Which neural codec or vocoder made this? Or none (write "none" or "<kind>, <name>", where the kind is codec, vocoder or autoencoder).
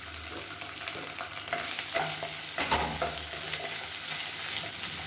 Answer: none